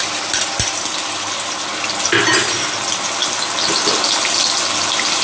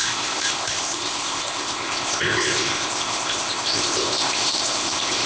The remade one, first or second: second